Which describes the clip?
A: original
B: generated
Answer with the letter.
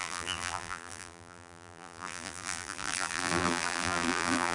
B